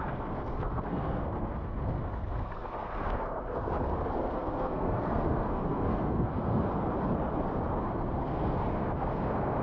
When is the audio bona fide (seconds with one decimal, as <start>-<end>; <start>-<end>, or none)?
6.7-7.8